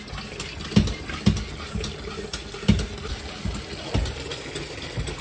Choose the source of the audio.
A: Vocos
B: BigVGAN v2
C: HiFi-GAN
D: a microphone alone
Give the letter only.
D